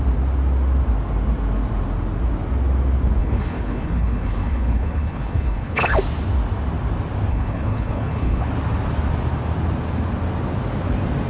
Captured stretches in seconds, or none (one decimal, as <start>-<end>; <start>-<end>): 0.0-3.2; 6.0-7.3; 8.5-11.3